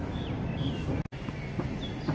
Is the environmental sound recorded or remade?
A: recorded